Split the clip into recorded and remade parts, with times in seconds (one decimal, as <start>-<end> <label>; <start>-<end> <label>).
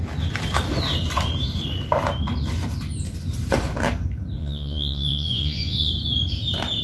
0.0-4.4 recorded; 4.4-5.9 remade; 5.9-6.8 recorded